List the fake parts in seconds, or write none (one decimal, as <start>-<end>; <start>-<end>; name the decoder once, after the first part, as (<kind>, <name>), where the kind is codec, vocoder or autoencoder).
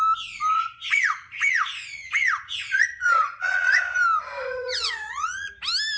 0.5-3.8 (vocoder, Vocos); 4.4-5.5